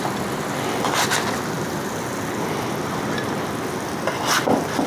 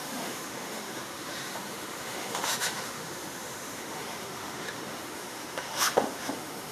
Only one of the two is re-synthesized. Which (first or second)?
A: second